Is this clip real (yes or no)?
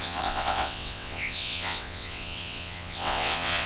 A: no